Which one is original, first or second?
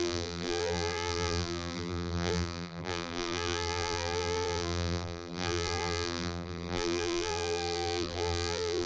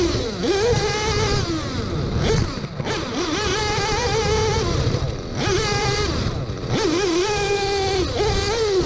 second